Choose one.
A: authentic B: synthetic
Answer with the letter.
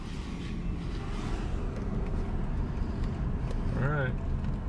A